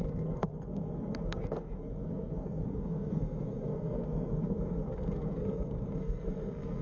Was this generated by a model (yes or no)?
yes